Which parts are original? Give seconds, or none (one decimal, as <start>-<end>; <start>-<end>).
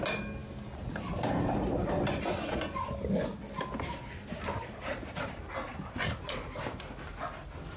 0.0-7.8